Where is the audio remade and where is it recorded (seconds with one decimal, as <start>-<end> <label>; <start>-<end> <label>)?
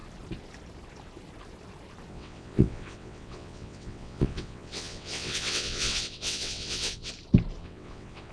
0.0-2.1 recorded; 2.1-7.1 remade; 7.1-7.6 recorded; 7.6-8.3 remade